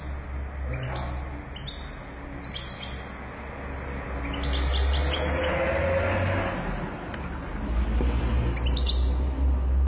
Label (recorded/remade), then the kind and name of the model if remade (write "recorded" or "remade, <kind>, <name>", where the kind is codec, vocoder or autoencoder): recorded